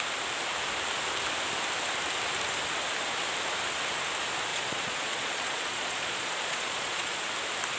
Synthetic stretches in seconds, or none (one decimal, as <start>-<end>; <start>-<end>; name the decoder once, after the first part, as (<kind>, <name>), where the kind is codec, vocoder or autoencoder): 4.5-7.2 (vocoder, Vocos)